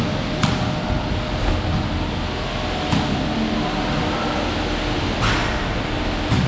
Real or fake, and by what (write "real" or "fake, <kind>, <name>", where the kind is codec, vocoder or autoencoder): real